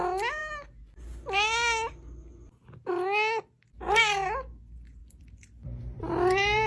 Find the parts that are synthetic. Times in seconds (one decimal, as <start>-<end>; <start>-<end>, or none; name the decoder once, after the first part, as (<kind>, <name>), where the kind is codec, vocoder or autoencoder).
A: 5.0-6.7 (vocoder, BigVGAN v2)